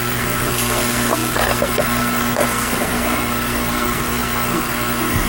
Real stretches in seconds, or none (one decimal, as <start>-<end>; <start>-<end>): none

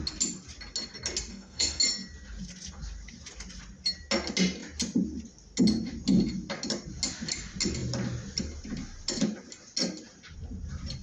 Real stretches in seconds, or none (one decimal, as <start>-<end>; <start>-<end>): 0.0-1.3; 1.8-11.0

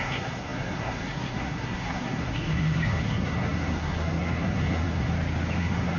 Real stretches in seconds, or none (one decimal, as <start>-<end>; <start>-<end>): 5.1-5.6

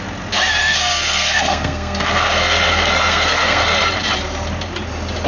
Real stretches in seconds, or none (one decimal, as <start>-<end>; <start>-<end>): 0.0-0.6; 3.8-5.3

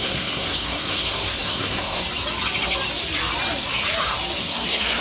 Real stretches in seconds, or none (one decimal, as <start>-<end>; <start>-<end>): 2.0-4.4

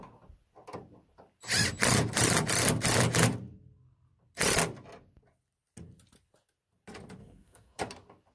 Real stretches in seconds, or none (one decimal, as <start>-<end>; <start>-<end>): 0.0-7.2; 7.8-8.3